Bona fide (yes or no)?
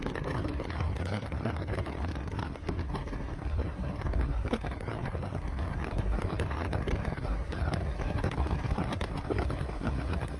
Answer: no